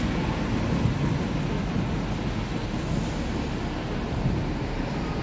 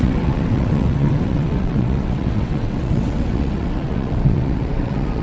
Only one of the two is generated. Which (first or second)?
second